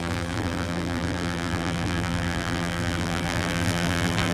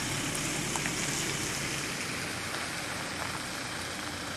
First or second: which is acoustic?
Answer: second